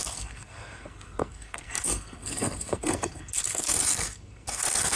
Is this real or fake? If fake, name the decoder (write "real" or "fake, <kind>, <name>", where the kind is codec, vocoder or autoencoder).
fake, codec, SNAC